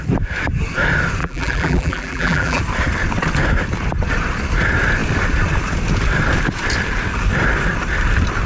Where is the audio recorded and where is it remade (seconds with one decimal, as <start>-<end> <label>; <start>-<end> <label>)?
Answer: 0.0-1.2 recorded; 1.2-2.6 remade; 2.6-8.5 recorded